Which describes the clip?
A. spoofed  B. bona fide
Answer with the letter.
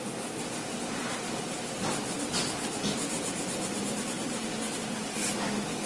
B